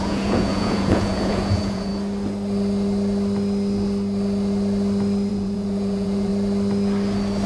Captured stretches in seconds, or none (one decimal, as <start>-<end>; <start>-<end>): 1.9-5.3; 6.3-7.5